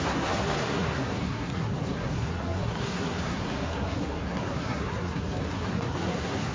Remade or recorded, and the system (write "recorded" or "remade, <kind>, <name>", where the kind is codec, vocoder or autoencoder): remade, codec, SNAC